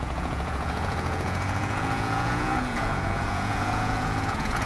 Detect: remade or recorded remade